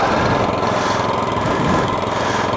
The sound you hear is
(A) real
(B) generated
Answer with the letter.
A